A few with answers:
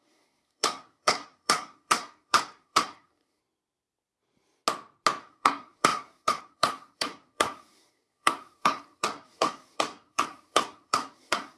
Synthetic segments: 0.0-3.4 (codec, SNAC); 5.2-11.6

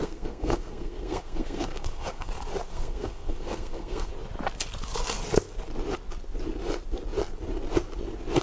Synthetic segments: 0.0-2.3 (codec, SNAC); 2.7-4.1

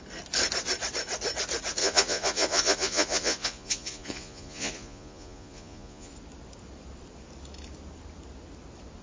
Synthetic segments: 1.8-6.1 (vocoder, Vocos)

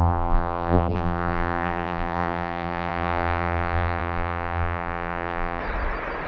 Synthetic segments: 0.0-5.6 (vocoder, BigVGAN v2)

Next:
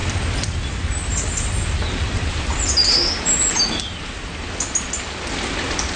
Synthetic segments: none